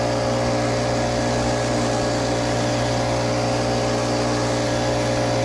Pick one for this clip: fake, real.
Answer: real